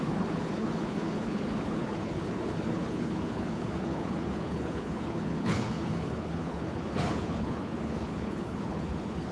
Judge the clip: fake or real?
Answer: fake